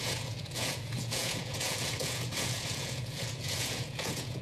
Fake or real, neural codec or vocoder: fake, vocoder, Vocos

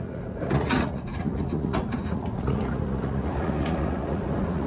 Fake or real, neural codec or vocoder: fake, vocoder, Vocos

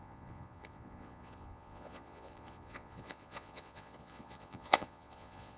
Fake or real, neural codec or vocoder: fake, vocoder, Vocos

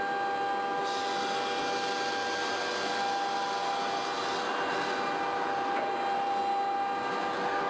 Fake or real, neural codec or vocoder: real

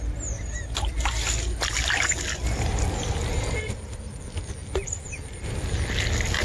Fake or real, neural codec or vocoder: real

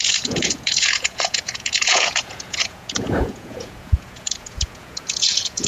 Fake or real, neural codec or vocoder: fake, vocoder, Vocos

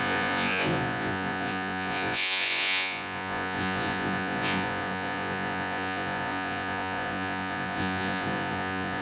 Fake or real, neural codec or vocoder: fake, vocoder, Vocos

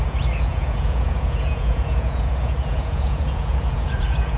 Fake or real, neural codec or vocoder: fake, vocoder, Vocos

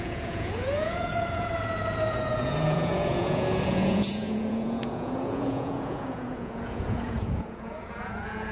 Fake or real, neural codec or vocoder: fake, vocoder, Vocos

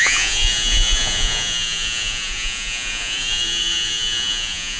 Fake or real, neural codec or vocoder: fake, vocoder, Vocos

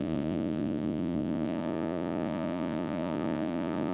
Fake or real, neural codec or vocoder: fake, vocoder, Vocos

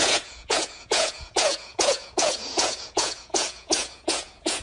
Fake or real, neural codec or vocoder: fake, vocoder, Vocos